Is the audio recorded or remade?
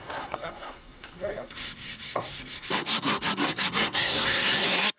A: remade